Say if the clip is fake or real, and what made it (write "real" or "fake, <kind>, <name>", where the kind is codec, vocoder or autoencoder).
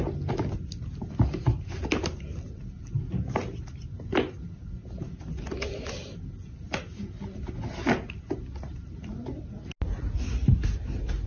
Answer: real